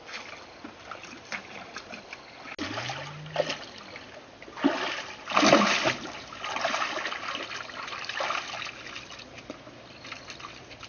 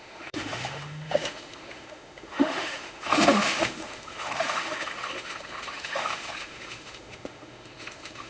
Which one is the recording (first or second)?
first